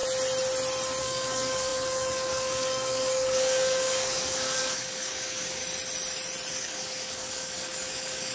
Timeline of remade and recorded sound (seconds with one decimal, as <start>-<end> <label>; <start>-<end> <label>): 0.0-1.0 recorded; 1.0-5.6 remade; 5.6-6.5 recorded; 6.5-8.3 remade